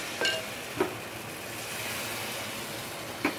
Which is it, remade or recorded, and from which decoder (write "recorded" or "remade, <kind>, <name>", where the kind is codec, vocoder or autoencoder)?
recorded